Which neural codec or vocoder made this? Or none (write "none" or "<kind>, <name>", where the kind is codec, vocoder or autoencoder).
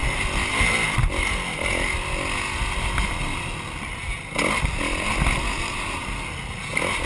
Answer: none